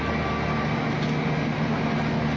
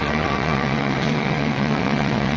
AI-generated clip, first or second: second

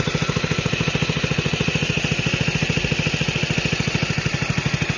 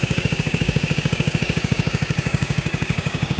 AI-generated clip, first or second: second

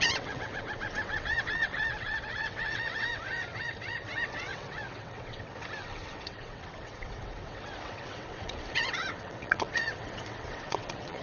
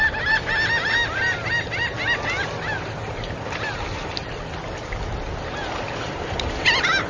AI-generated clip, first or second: first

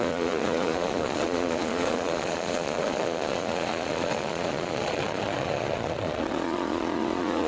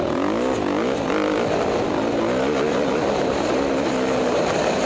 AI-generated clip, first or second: first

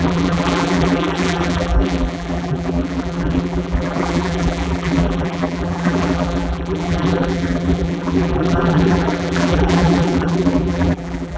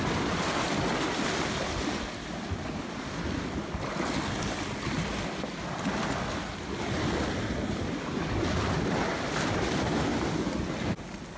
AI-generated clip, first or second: first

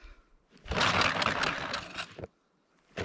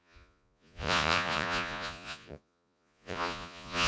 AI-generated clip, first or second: second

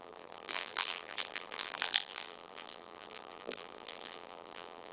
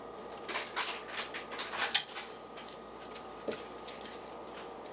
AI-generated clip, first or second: first